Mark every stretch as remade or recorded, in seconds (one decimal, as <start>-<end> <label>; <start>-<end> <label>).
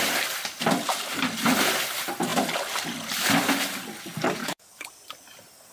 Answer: 0.0-4.4 recorded; 4.4-4.9 remade; 4.9-5.7 recorded